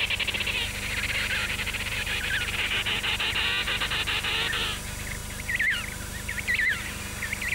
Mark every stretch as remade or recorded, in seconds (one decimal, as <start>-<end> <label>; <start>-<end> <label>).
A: 0.0-1.4 recorded; 1.4-2.6 remade; 2.6-5.2 recorded; 5.2-7.0 remade; 7.0-7.5 recorded